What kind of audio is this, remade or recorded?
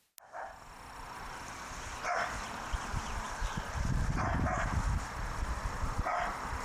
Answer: recorded